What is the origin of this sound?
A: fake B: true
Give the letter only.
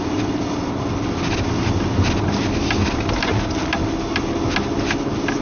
B